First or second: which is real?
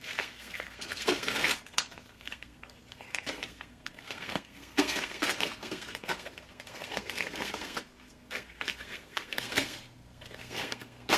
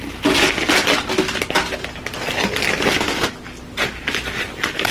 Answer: second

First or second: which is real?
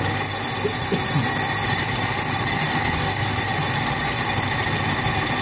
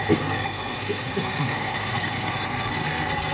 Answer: first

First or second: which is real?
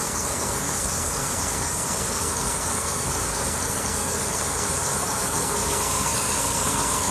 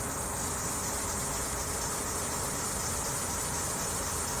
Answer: second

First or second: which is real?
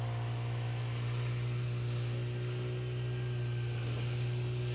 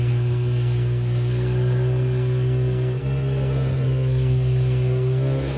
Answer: first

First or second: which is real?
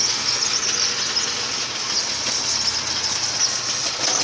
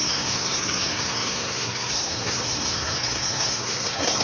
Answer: first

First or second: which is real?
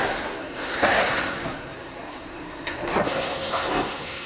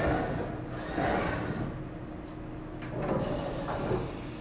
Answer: second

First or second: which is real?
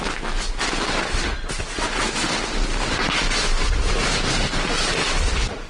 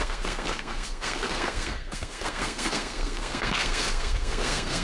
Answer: first